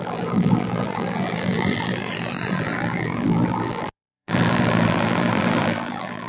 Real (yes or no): no